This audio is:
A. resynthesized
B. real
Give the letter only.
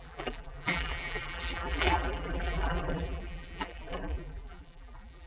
A